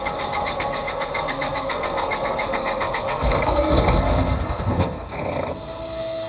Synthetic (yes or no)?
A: yes